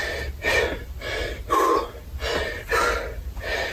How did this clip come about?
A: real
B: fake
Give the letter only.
A